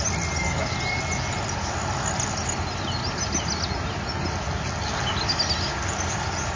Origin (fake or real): real